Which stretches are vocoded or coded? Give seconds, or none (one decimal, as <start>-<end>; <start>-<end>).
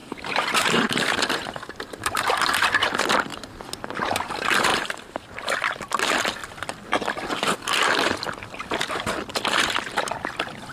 0.0-2.1; 4.7-5.4